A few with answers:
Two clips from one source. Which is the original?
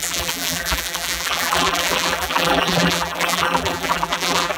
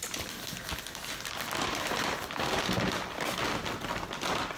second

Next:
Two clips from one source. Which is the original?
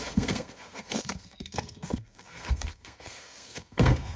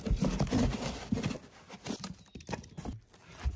second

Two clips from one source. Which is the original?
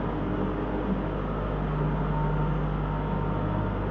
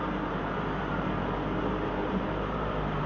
first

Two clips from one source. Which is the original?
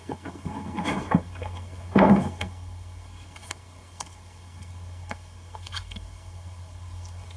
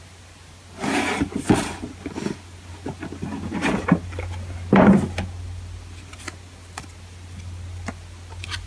second